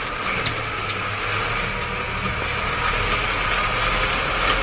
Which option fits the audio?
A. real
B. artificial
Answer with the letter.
A